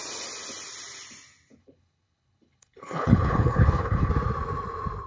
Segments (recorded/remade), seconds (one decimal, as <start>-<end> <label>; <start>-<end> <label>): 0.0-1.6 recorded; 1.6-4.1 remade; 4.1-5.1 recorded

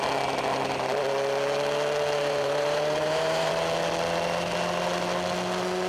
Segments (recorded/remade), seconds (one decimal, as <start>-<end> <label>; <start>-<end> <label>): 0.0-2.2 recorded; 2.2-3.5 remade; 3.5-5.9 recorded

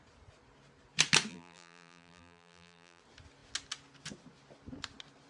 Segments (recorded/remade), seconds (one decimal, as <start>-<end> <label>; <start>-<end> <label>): 0.0-1.3 recorded; 1.3-3.0 remade; 3.0-5.3 recorded

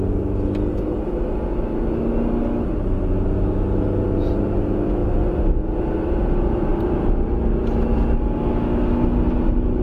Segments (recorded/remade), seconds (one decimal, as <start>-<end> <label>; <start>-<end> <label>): 0.0-6.7 recorded; 6.7-7.3 remade; 7.3-9.8 recorded

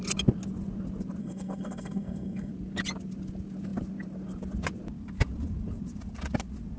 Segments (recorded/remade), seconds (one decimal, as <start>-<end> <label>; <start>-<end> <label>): 0.0-1.2 recorded; 1.2-2.5 remade; 2.5-6.8 recorded